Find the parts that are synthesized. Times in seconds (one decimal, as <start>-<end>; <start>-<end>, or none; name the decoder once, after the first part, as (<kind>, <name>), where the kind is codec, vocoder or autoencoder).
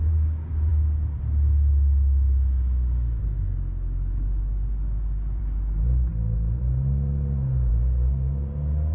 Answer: none